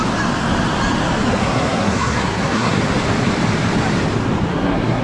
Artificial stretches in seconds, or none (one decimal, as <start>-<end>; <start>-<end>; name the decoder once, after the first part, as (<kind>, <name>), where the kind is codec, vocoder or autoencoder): 1.4-2.8 (codec, SNAC); 4.5-5.0

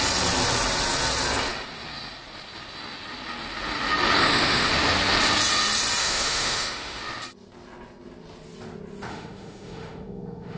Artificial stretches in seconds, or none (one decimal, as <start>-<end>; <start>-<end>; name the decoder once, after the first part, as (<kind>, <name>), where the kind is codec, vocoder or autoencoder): 4.2-4.7 (autoencoder, DAC-VAE); 6.0-7.0; 9.1-10.6

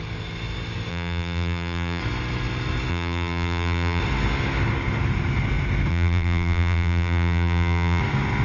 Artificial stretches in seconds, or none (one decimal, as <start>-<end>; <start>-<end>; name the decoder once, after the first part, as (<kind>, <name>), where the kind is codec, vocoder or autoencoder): 0.9-2.0 (vocoder, BigVGAN v2); 2.9-4.0; 5.9-8.0

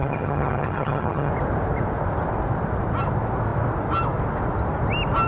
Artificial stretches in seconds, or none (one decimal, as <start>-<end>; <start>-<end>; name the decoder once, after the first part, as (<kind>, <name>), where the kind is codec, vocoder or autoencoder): 0.0-1.3 (vocoder, HiFi-GAN)

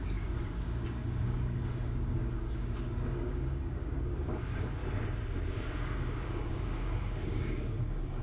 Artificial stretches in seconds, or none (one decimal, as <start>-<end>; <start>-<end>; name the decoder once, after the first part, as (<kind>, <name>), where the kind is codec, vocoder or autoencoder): 0.0-4.8 (codec, DAC); 5.5-8.2

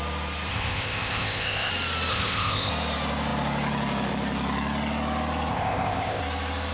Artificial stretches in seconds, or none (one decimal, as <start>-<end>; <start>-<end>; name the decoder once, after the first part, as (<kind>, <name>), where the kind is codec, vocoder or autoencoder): 0.5-1.7 (codec, ZipCodec); 2.1-2.7; 5.5-6.2